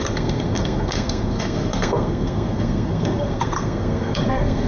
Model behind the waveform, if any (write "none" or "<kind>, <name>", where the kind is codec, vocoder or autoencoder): codec, SNAC